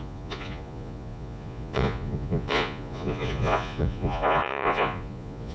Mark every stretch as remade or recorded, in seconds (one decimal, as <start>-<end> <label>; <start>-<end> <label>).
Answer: 0.0-5.5 remade